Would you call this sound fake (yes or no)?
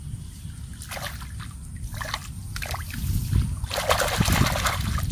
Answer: no